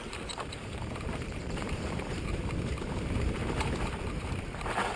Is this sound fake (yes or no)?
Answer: yes